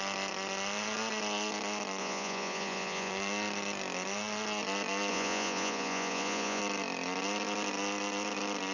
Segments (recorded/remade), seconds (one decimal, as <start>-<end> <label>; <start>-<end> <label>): 0.0-2.0 recorded; 2.0-3.1 remade; 3.1-5.1 recorded; 5.1-6.6 remade; 6.6-8.7 recorded

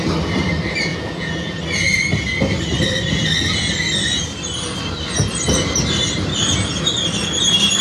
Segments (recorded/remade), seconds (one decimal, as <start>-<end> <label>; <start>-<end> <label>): 0.0-0.9 recorded; 0.9-1.6 remade; 1.6-7.8 recorded

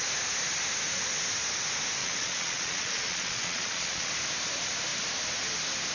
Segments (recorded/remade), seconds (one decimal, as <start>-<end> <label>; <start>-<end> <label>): 0.0-2.0 recorded; 2.0-4.1 remade; 4.1-5.9 recorded

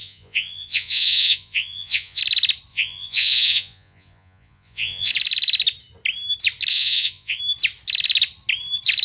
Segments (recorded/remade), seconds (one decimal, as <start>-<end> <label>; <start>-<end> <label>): 0.0-2.2 remade; 2.2-2.7 recorded; 2.7-5.1 remade; 5.1-6.7 recorded; 6.7-7.4 remade; 7.4-9.0 recorded